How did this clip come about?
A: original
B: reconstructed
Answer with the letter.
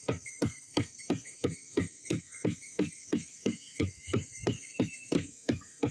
B